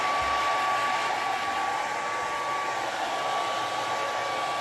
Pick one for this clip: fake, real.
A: real